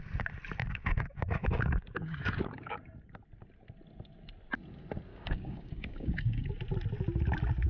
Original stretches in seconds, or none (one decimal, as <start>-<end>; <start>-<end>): 0.0-0.6; 2.8-5.1; 6.5-7.7